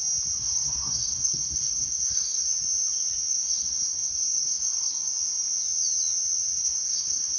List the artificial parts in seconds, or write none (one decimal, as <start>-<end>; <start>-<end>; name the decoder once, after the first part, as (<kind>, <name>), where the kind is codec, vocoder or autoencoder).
0.4-2.5 (codec, SNAC); 3.3-5.1; 6.6-7.4